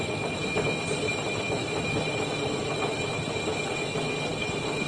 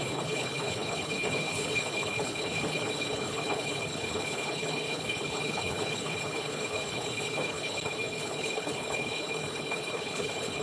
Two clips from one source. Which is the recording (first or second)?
first